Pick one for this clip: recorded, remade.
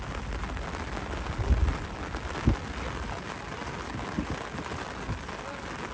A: recorded